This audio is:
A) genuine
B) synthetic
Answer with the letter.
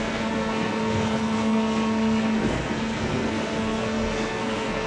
B